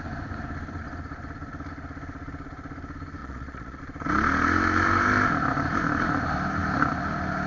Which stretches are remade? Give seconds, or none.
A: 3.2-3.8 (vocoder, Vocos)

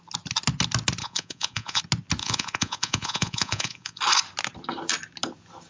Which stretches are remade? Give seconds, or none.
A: 1.0-1.8 (vocoder, Vocos); 2.2-4.0

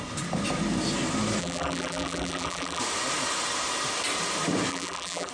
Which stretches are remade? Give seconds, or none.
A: 1.4-2.8 (vocoder, BigVGAN v2); 4.7-5.3

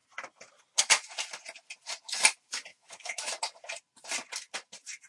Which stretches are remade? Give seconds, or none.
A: 2.7-3.3 (autoencoder, DAC-VAE)

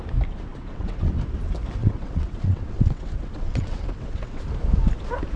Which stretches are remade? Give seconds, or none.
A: 0.5-1.1 (vocoder, WaveNeXt); 1.8-4.4

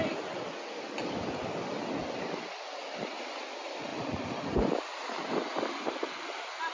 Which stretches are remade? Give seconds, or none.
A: none

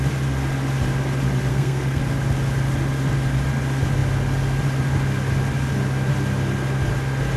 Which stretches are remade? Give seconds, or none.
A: 1.5-2.0 (codec, SNAC)

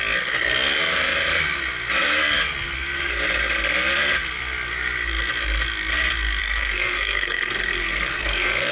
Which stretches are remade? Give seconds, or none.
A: 6.4-8.7 (codec, SNAC)